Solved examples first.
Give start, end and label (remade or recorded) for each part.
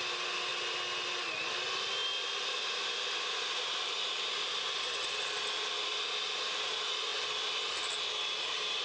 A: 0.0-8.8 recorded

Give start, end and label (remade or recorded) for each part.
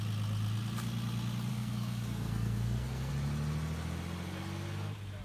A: 0.0-1.5 recorded; 1.5-3.1 remade; 3.1-5.2 recorded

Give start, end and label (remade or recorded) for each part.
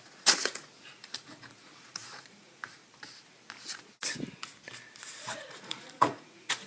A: 0.0-2.8 remade; 2.8-5.0 recorded; 5.0-6.7 remade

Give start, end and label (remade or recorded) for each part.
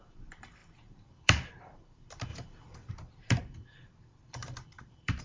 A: 0.0-5.2 remade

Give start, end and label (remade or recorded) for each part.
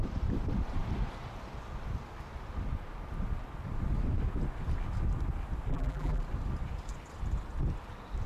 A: 0.0-5.7 recorded; 5.7-6.2 remade; 6.2-8.3 recorded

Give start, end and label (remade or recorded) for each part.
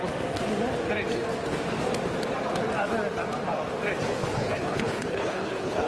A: 0.0-4.2 recorded; 4.2-5.9 remade